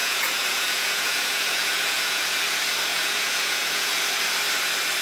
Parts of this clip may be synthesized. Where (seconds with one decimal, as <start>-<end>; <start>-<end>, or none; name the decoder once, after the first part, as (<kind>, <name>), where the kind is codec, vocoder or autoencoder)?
0.0-2.4 (vocoder, Vocos); 2.9-3.9